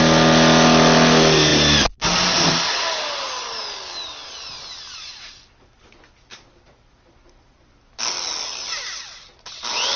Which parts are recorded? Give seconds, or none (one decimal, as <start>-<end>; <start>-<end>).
0.0-10.0